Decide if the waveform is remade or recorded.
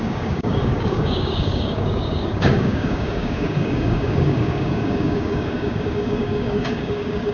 remade